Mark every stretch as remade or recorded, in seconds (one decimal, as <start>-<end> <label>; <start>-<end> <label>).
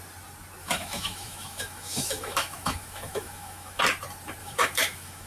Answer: 0.0-0.6 recorded; 0.6-3.8 remade; 3.8-4.4 recorded; 4.4-5.3 remade